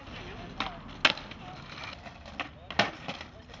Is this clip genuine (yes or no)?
yes